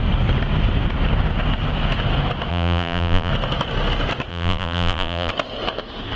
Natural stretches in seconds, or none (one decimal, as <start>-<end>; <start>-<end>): 0.0-2.5; 3.3-4.3; 5.3-6.2

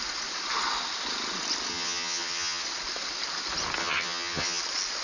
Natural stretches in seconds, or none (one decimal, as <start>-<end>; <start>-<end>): 0.0-1.7; 2.6-3.8; 4.6-5.0

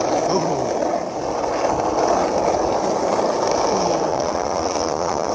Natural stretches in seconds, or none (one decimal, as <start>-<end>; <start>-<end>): 0.0-4.1

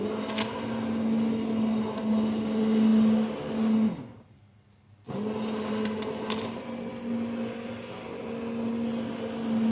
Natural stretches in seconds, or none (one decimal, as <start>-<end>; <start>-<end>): 0.0-9.7

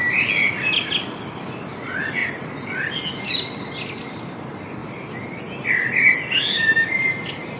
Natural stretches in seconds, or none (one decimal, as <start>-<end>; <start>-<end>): 0.0-7.6

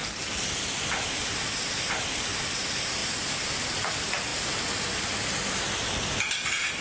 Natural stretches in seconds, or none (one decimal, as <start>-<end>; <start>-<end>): 1.9-3.0; 3.9-6.8

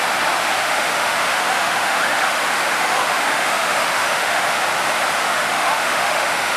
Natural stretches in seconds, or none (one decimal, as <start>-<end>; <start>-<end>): 0.0-0.6; 4.6-5.2